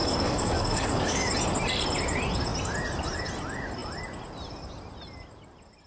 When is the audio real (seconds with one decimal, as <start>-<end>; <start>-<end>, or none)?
1.3-5.9